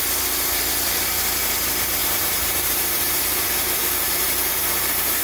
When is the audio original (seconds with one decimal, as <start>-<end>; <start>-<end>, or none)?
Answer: 0.0-2.0